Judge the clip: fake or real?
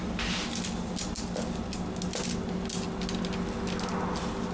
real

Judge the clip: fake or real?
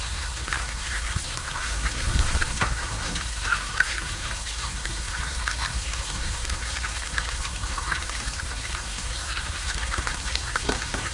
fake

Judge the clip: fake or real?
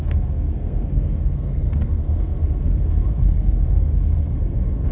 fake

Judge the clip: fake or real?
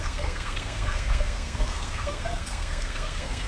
fake